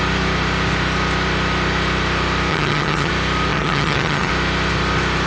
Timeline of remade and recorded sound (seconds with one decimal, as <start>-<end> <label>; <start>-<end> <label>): 0.0-2.5 recorded; 2.5-3.1 remade; 3.1-3.5 recorded; 3.5-4.3 remade; 4.3-5.3 recorded